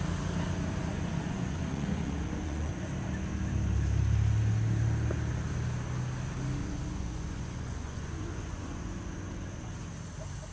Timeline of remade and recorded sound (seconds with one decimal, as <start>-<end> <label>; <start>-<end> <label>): 0.0-0.8 recorded; 0.8-2.9 remade; 2.9-6.6 recorded; 6.6-9.7 remade; 9.7-10.5 recorded